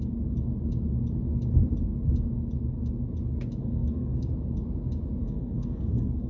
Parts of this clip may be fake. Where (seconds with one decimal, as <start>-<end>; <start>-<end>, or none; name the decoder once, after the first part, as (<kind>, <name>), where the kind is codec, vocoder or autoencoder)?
3.6-4.3 (codec, SNAC); 5.2-6.3